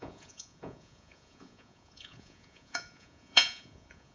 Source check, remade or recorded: remade